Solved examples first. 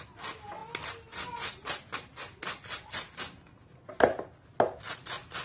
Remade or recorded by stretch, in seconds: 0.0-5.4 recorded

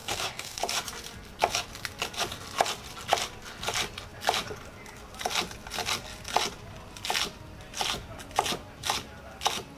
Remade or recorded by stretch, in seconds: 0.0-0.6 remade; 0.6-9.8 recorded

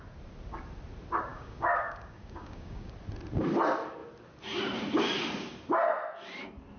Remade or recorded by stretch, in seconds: 0.0-1.3 recorded; 1.3-2.9 remade; 2.9-6.8 recorded

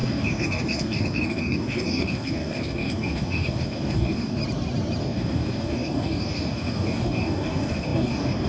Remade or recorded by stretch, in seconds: 0.0-4.4 remade; 4.4-5.0 recorded; 5.0-8.5 remade

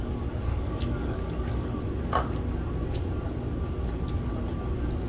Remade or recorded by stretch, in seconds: 0.0-0.5 recorded; 0.5-1.8 remade; 1.8-5.1 recorded

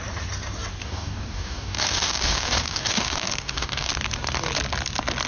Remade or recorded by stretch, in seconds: 0.0-0.8 recorded; 0.8-3.9 remade; 3.9-5.3 recorded